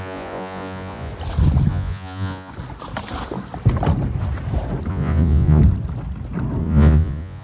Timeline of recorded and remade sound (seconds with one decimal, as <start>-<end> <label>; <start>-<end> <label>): 0.0-1.1 remade; 1.1-1.7 recorded; 1.7-2.5 remade; 2.5-4.9 recorded; 4.9-5.6 remade; 5.6-6.6 recorded; 6.6-7.4 remade